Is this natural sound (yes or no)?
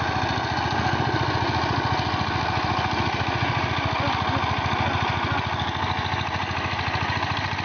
yes